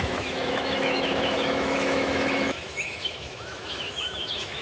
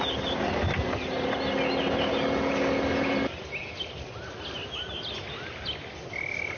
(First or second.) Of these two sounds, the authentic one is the second